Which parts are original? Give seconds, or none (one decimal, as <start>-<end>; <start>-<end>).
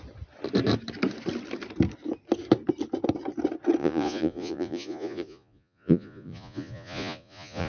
0.0-3.8